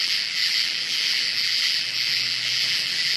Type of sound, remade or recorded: remade